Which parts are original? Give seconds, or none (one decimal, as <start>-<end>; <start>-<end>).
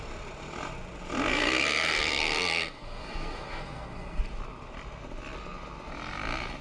0.0-1.3; 4.2-6.6